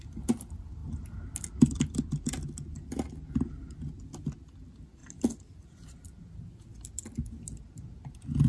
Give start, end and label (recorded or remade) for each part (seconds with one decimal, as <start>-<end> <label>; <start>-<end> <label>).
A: 0.0-8.5 recorded